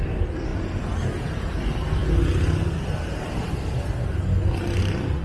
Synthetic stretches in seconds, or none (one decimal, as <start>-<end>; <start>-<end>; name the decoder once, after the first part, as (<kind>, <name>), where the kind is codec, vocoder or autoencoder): none

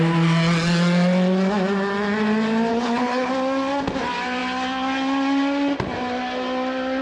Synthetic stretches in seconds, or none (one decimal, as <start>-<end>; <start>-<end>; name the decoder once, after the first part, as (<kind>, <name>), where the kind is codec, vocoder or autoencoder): 2.7-3.3 (codec, HILCodec)

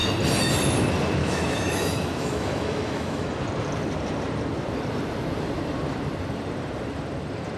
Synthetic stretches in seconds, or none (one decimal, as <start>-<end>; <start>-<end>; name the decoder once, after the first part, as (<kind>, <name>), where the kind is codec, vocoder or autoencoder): 1.2-3.3 (autoencoder, DAC-VAE)

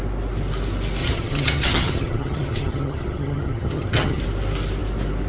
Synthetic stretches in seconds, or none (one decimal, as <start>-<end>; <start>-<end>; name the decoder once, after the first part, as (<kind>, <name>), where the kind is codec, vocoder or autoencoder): 1.0-4.2 (vocoder, HiFi-GAN)

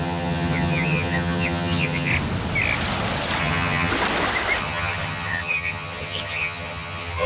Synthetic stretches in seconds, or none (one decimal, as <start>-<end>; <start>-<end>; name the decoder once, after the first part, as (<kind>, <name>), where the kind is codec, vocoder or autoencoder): 0.0-2.1 (vocoder, HiFi-GAN); 3.4-3.9; 4.6-7.3

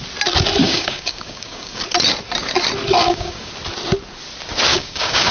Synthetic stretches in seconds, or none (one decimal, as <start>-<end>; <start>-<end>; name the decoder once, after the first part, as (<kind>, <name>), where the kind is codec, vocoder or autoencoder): 0.6-1.8 (codec, DAC); 3.0-3.5; 4.7-5.3